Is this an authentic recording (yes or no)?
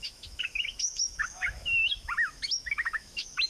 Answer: no